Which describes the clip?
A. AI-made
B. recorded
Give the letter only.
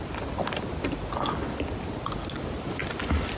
B